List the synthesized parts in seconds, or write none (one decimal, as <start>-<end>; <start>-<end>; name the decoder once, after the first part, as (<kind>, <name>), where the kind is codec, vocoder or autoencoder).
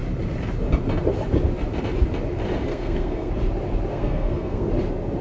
2.7-3.3 (codec, SNAC); 3.9-4.7